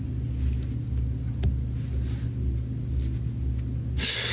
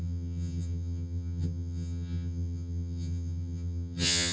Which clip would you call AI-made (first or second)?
second